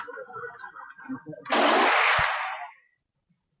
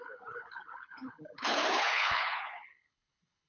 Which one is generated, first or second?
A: second